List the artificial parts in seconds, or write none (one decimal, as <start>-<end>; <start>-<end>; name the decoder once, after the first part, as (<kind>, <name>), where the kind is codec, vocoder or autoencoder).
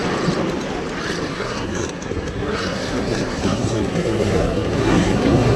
1.3-5.6 (codec, SNAC)